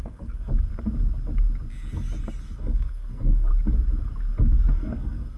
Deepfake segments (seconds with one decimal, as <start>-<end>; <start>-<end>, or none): 0.0-0.5; 2.6-3.5; 4.7-5.4